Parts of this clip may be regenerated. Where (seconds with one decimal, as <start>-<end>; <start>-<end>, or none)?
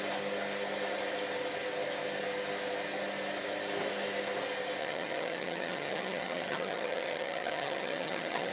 4.8-8.5